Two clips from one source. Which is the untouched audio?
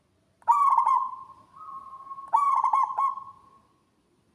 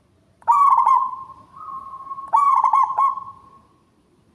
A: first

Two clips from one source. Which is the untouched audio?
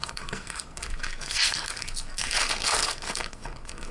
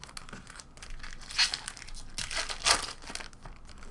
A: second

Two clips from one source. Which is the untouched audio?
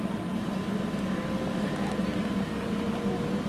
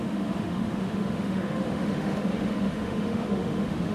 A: first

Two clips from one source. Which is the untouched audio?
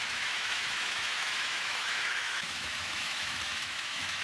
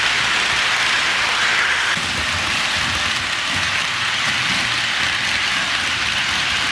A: second